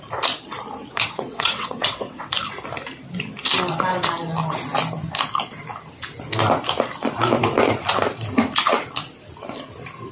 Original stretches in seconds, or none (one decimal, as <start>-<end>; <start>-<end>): 0.0-0.8; 2.3-10.1